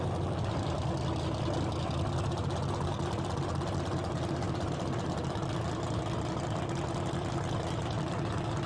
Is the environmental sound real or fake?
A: real